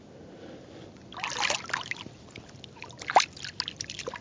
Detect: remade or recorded recorded